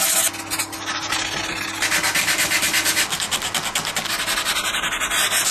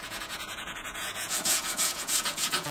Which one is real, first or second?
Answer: first